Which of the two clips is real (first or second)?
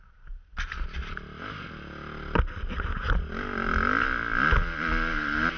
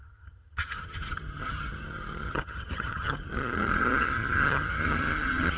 first